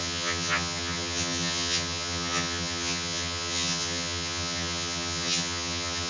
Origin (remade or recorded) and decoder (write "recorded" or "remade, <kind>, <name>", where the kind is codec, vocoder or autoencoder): remade, vocoder, HiFi-GAN